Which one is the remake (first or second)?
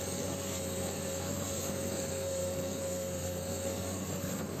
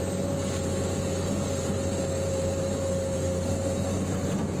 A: first